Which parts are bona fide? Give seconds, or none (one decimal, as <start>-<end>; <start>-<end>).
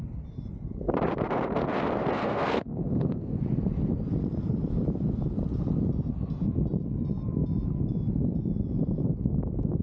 0.0-2.2; 3.4-9.8